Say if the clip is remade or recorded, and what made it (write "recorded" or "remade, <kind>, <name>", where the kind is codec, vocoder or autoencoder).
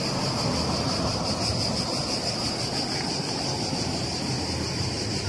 recorded